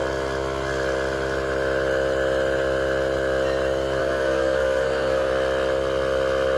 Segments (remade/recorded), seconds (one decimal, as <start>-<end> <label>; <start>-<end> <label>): 0.0-4.0 recorded; 4.0-5.3 remade; 5.3-6.6 recorded